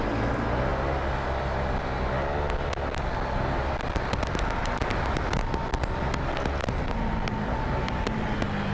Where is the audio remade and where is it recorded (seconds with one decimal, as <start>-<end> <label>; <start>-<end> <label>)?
0.0-8.7 recorded